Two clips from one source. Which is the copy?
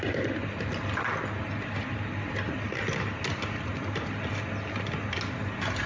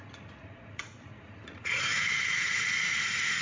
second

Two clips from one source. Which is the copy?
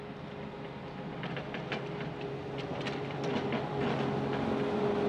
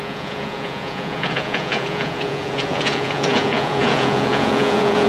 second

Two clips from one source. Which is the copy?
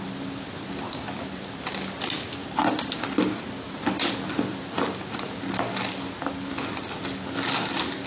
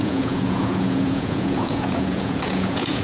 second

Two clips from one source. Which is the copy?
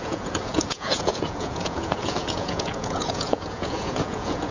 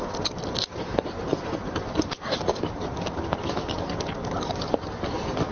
first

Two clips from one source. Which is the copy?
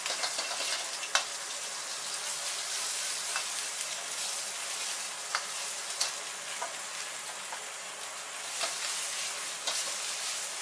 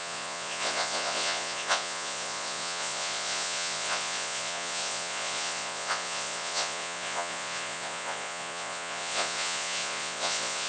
second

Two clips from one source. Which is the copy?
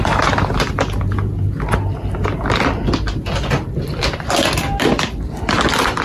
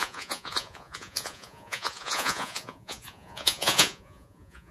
second